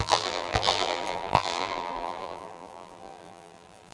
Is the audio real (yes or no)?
no